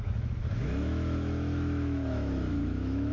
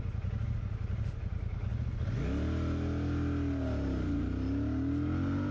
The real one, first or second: second